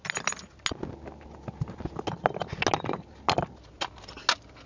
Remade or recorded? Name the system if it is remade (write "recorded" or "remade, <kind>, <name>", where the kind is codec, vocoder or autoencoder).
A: recorded